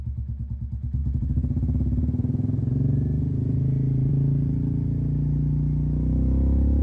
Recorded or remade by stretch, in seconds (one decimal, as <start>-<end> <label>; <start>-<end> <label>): 0.0-1.0 recorded; 1.0-4.1 remade; 4.1-6.8 recorded